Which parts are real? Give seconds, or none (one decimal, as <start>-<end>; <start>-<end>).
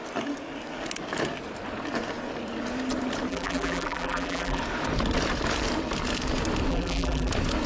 0.0-3.3; 4.6-6.7; 7.3-7.7